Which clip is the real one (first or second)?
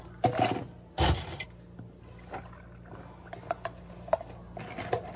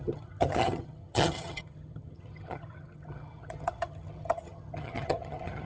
first